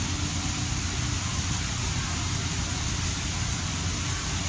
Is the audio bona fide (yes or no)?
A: yes